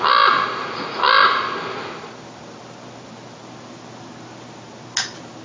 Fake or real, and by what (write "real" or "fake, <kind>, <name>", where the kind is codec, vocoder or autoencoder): real